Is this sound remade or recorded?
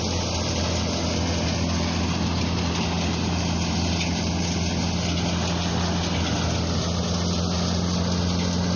recorded